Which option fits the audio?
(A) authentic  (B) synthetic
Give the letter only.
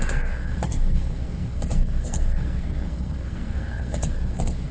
B